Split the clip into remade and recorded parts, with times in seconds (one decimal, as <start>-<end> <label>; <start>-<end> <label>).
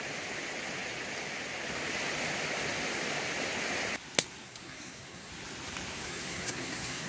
0.0-4.4 recorded; 4.4-5.3 remade; 5.3-5.9 recorded; 5.9-7.1 remade